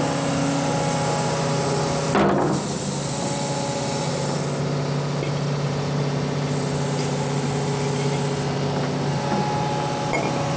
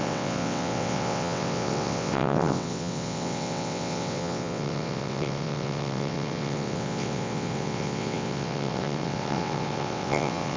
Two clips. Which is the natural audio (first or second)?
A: first